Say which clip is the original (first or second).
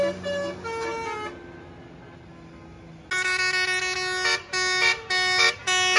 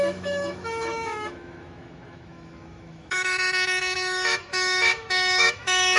first